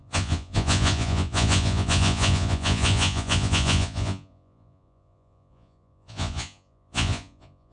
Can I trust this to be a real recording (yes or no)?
no